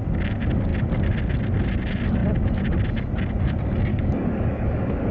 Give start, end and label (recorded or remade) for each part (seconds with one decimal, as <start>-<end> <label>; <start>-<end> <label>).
0.0-3.9 recorded; 3.9-5.1 remade